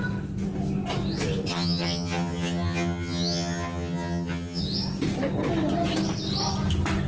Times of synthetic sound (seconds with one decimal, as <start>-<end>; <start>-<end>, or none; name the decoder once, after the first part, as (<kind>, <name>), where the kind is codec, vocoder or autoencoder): 1.5-4.6 (vocoder, HiFi-GAN)